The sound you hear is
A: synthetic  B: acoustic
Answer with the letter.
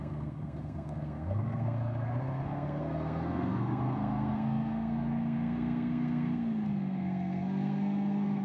A